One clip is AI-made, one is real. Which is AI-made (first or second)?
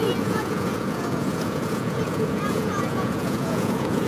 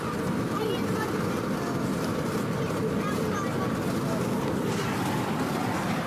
first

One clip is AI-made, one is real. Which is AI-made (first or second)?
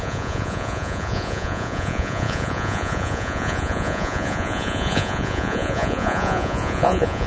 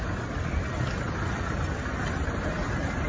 first